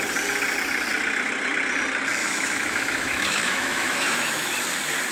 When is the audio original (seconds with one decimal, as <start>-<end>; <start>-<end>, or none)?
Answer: 0.0-2.2; 4.5-5.1